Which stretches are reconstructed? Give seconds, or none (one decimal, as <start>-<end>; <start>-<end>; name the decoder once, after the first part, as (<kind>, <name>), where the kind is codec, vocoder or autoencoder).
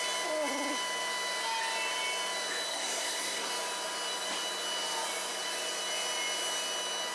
2.7-3.5 (codec, SNAC)